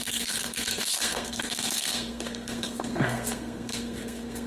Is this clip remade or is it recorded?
remade